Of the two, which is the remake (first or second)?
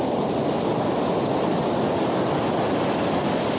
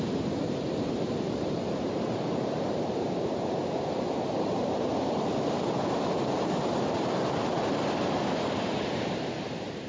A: second